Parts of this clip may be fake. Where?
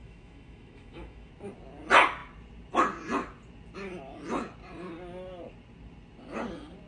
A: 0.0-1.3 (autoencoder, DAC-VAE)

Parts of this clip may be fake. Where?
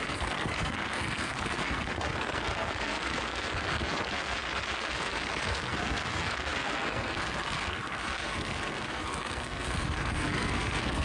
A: 0.0-11.0 (codec, SNAC)